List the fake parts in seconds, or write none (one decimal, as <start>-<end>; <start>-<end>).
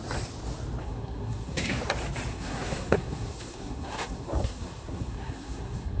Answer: 0.8-1.8; 2.3-6.0